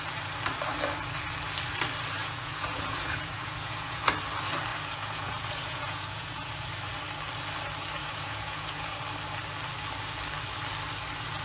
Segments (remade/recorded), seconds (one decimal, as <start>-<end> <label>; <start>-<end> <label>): 0.0-2.2 recorded; 2.2-4.1 remade; 4.1-4.7 recorded; 4.7-6.5 remade; 6.5-8.0 recorded; 8.0-9.0 remade; 9.0-11.4 recorded